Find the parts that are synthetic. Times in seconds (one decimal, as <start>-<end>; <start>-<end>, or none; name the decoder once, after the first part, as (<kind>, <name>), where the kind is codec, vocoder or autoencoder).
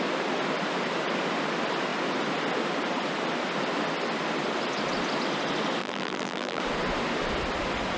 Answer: 5.8-6.6 (vocoder, BigVGAN v2)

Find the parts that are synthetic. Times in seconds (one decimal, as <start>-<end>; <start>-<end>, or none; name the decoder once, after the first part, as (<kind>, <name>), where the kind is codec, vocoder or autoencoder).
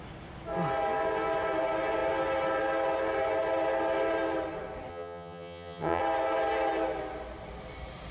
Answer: 4.9-6.0 (vocoder, HiFi-GAN)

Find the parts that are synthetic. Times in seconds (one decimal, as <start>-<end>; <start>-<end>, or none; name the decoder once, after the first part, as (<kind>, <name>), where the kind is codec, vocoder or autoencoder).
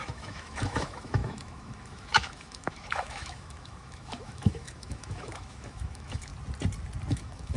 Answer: 0.0-6.3 (autoencoder, DAC-VAE); 7.1-7.6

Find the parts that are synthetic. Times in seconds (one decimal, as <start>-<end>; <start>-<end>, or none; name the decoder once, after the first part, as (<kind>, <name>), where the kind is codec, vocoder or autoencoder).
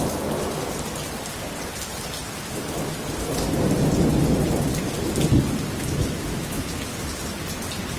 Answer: 6.0-6.6 (autoencoder, DAC-VAE)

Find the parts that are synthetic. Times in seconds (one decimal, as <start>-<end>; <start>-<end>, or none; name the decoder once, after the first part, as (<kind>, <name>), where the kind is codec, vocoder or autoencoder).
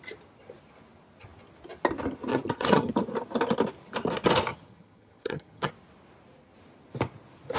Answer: 2.3-2.9 (vocoder, HiFi-GAN); 4.5-5.7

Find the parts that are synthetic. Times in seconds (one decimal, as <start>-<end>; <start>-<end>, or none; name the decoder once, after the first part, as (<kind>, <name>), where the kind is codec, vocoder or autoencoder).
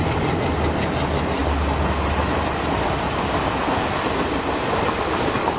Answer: none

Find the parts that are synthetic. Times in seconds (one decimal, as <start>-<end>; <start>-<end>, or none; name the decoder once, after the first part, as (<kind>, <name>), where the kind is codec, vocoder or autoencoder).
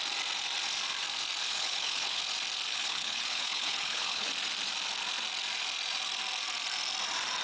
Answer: 1.4-2.2 (codec, HILCodec); 2.7-4.3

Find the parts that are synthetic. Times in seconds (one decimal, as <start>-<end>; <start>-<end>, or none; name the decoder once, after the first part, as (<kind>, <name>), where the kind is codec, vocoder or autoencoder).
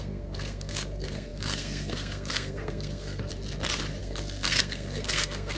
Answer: 0.0-3.3 (codec, SNAC); 4.0-5.6